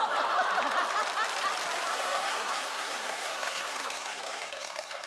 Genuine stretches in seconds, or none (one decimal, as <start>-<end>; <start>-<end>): 0.0-1.9